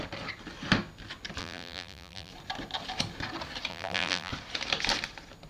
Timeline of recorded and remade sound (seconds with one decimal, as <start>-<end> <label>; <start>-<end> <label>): 0.0-1.4 recorded; 1.4-2.3 remade; 2.3-3.7 recorded; 3.7-4.3 remade; 4.3-5.5 recorded